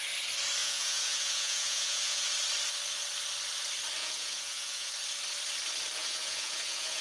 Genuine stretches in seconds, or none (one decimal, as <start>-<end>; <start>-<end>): 0.0-0.6; 2.3-4.0; 4.9-6.0